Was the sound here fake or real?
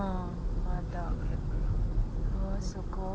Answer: real